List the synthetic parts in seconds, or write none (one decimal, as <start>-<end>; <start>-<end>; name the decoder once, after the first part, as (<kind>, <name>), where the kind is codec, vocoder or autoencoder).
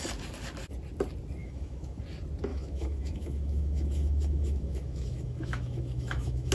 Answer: 1.4-2.0 (autoencoder, DAC-VAE); 2.5-6.5